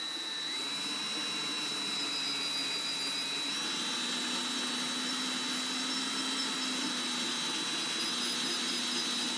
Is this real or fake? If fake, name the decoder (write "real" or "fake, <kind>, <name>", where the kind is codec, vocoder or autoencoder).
real